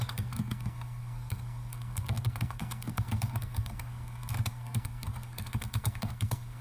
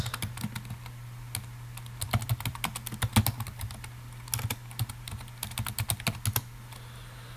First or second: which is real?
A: second